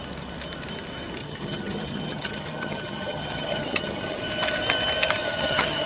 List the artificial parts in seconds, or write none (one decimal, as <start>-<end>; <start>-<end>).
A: 1.2-4.2; 5.2-5.9